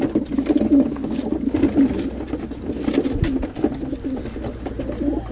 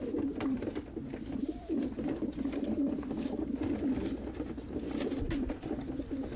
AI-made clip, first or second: second